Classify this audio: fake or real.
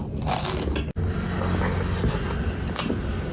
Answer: real